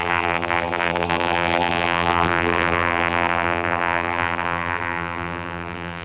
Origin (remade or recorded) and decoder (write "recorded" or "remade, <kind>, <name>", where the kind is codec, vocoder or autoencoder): remade, vocoder, BigVGAN v2